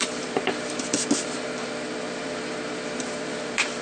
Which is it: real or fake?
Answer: fake